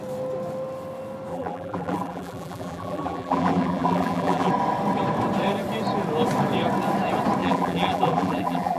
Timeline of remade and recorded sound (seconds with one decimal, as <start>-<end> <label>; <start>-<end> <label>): 0.0-1.3 recorded; 1.3-4.5 remade; 4.5-7.4 recorded; 7.4-8.8 remade